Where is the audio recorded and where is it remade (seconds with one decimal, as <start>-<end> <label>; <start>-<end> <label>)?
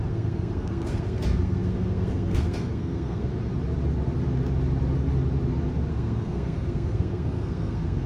0.0-3.3 remade; 3.3-5.9 recorded; 5.9-8.1 remade